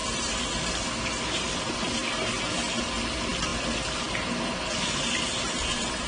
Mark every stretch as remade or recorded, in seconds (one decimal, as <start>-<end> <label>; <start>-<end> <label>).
0.0-0.5 remade; 0.5-6.1 recorded